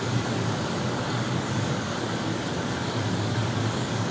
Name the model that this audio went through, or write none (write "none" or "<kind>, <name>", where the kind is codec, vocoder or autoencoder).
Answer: codec, DAC